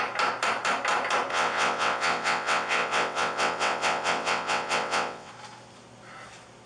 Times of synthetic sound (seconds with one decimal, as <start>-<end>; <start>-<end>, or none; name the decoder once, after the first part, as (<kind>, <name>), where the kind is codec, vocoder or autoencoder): 1.3-5.3 (vocoder, WaveNeXt)

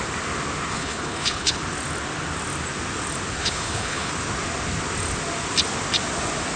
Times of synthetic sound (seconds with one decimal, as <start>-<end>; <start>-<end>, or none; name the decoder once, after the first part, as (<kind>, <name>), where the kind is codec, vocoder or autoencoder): 0.7-1.6 (codec, HILCodec); 3.4-4.1

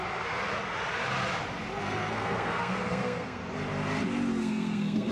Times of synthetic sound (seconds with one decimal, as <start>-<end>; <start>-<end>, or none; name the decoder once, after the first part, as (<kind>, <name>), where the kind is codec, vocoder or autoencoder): 1.8-3.4 (codec, SNAC); 4.4-5.1

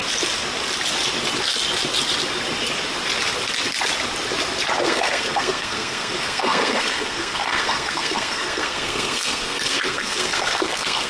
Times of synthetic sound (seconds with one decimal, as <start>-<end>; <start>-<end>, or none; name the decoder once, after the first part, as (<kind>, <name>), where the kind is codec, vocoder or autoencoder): 4.8-11.1 (codec, SNAC)